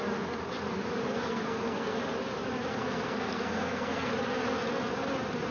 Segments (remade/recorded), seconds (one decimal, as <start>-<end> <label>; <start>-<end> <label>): 0.0-1.0 recorded; 1.0-2.0 remade; 2.0-2.7 recorded; 2.7-4.1 remade; 4.1-5.5 recorded